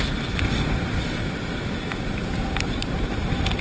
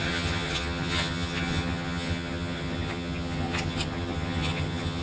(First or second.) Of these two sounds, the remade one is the second